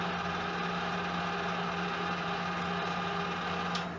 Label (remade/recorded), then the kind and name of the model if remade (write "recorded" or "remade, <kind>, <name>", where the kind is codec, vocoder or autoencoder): recorded